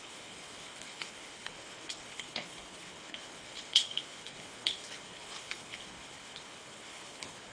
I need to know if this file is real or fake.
fake